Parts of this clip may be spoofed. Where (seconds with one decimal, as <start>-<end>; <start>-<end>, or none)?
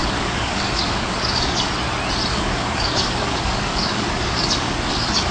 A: 0.0-1.7; 2.3-5.3